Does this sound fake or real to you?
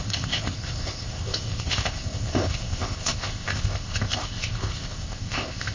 fake